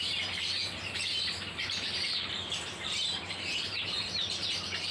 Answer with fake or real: fake